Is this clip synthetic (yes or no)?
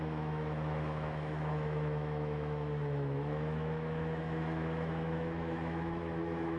yes